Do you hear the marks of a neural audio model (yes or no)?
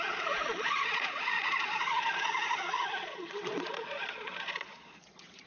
yes